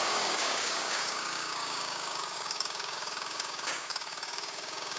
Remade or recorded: remade